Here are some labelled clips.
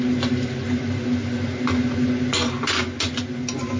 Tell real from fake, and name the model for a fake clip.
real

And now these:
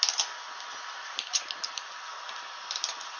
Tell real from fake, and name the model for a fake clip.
real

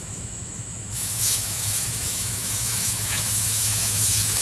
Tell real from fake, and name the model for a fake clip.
fake, autoencoder, DAC-VAE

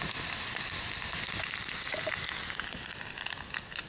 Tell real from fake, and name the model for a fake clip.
real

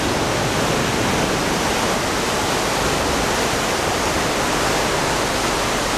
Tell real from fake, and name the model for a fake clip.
real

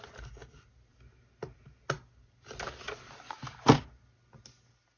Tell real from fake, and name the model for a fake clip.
real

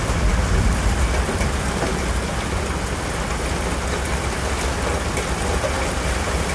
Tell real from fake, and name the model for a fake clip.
real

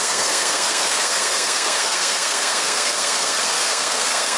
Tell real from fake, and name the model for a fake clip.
fake, codec, SNAC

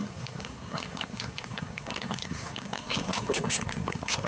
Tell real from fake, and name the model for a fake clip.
fake, codec, SNAC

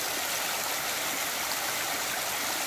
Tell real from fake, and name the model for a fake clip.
real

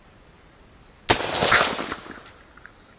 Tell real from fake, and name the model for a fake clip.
real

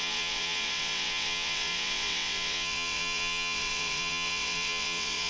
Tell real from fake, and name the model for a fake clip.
fake, vocoder, WaveNeXt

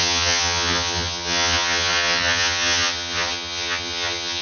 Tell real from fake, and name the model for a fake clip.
fake, vocoder, HiFi-GAN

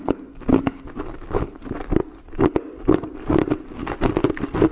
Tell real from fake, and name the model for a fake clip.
real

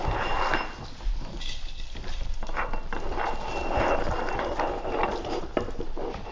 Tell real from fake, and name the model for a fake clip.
real